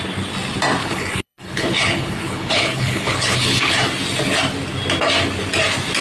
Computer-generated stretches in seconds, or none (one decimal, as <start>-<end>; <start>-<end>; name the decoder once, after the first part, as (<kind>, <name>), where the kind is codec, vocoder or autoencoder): 0.8-3.7 (codec, HILCodec)